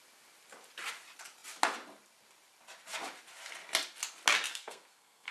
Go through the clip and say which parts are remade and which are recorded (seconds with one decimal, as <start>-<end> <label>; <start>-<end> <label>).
0.0-4.5 recorded; 4.5-5.3 remade